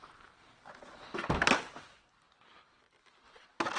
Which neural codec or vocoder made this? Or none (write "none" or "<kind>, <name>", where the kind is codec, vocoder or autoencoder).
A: none